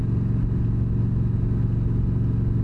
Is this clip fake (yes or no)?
no